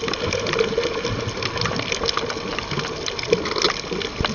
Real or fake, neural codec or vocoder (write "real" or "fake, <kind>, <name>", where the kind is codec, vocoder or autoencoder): real